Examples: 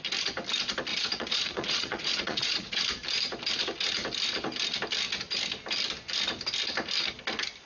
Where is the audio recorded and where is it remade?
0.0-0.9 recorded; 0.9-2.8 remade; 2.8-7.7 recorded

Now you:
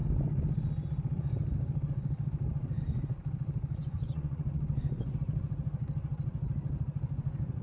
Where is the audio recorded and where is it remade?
0.0-3.8 recorded; 3.8-5.2 remade; 5.2-7.6 recorded

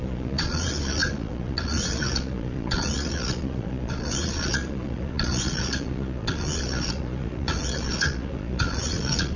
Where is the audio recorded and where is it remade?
0.0-9.4 remade

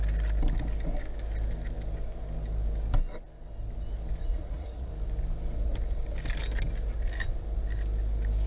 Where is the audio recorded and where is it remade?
0.0-4.2 recorded; 4.2-4.9 remade; 4.9-8.5 recorded

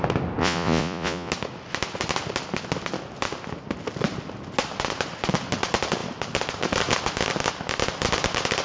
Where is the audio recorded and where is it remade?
0.0-0.4 recorded; 0.4-1.3 remade; 1.3-8.6 recorded